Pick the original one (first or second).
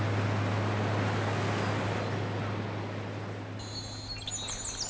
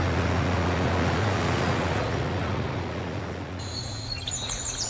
first